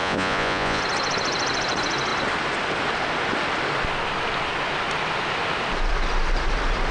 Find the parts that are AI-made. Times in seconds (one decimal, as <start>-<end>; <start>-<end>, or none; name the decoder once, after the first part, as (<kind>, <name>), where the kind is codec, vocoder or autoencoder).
0.0-0.8 (vocoder, Vocos)